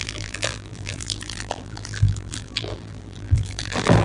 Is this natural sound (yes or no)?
no